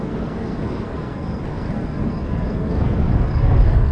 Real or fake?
fake